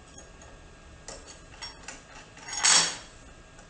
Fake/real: real